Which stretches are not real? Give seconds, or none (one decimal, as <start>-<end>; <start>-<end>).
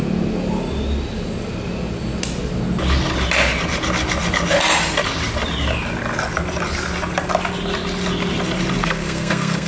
8.8-9.7